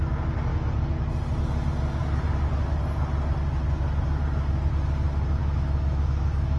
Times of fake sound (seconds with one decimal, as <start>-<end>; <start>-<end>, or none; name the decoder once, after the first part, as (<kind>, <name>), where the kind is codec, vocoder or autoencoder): 0.5-1.1 (autoencoder, DAC-VAE); 5.4-6.6